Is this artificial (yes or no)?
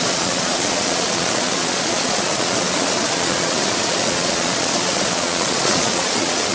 yes